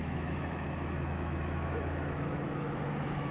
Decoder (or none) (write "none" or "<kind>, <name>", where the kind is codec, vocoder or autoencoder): autoencoder, DAC-VAE